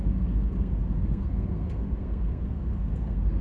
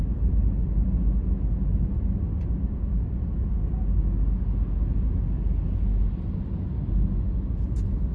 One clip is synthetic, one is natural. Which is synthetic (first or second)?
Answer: first